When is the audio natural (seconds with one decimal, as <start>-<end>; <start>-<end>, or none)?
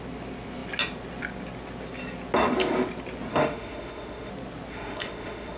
0.0-3.3; 4.3-4.7